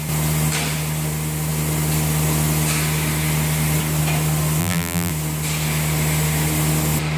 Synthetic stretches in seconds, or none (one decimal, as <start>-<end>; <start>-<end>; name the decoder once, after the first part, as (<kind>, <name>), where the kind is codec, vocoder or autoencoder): 4.6-5.1 (vocoder, BigVGAN v2)